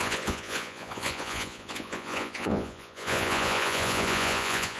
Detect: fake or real fake